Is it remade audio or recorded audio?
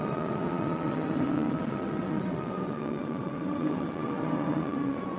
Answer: remade